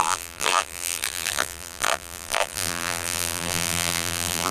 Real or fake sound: fake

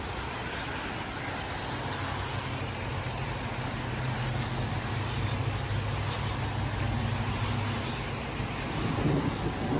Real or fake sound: real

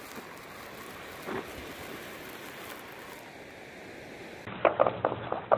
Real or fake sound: real